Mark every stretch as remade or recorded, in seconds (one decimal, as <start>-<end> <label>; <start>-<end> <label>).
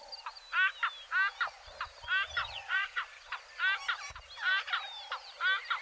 0.0-2.4 recorded; 2.4-3.4 remade; 3.4-5.8 recorded